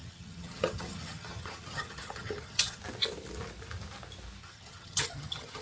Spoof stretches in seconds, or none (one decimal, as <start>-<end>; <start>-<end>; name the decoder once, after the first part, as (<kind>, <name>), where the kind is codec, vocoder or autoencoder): 0.0-2.8 (vocoder, HiFi-GAN); 4.4-5.6